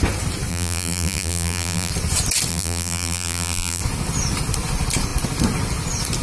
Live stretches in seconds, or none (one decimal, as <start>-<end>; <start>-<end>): 0.0-0.5; 1.9-2.5; 3.8-6.2